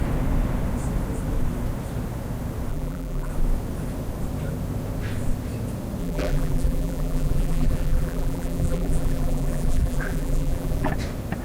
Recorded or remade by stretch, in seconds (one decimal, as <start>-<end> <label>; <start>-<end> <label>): 0.0-2.7 recorded; 2.7-3.3 remade; 3.3-6.0 recorded; 6.0-10.9 remade; 10.9-11.4 recorded

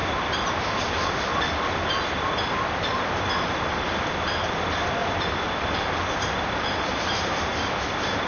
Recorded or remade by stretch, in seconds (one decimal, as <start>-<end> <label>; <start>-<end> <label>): 0.0-2.9 recorded; 2.9-3.9 remade; 3.9-5.0 recorded; 5.0-7.7 remade; 7.7-8.3 recorded

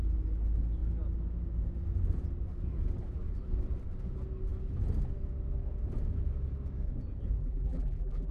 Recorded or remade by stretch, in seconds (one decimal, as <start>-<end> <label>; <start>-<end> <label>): 0.0-7.4 recorded; 7.4-8.3 remade

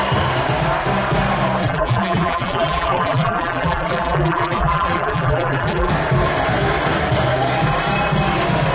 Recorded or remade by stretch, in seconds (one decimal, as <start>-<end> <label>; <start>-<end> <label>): 0.0-1.6 recorded; 1.6-5.9 remade; 5.9-8.7 recorded

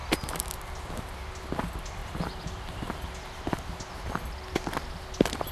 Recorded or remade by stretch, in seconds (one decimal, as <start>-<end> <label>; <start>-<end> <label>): 0.0-5.5 recorded